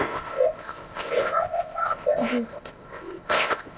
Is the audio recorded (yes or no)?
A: no